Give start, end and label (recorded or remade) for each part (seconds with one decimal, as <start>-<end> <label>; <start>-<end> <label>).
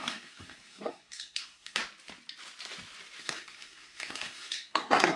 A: 0.0-1.8 remade; 1.8-3.2 recorded; 3.2-5.2 remade